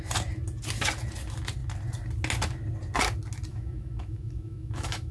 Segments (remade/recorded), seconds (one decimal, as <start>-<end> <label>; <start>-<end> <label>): 0.0-3.5 recorded; 3.5-5.1 remade